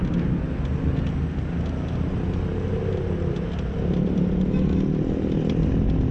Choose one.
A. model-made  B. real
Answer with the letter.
B